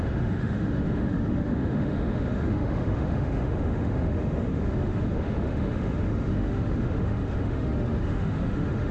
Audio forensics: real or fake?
fake